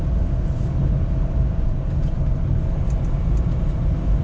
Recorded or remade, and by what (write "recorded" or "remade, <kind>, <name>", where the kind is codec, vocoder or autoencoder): recorded